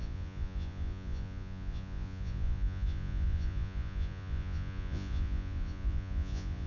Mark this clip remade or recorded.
remade